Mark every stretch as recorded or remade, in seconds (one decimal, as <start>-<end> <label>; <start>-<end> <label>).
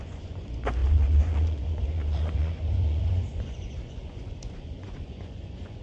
0.0-5.8 remade